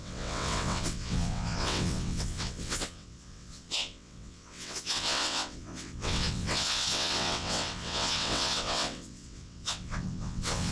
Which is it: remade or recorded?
remade